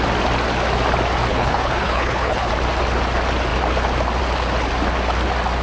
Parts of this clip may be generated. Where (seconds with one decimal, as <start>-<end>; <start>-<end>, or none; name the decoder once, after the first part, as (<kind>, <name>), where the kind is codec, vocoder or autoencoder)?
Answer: 1.3-2.5 (codec, HILCodec)